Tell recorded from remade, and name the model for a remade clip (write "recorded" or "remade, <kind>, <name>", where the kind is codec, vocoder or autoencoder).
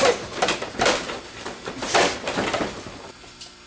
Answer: remade, vocoder, BigVGAN v2